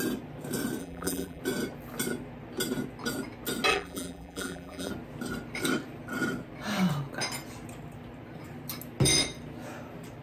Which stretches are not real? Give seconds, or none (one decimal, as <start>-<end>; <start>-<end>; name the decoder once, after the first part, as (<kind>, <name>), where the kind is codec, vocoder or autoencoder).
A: 0.8-1.4 (vocoder, BigVGAN v2); 3.7-4.9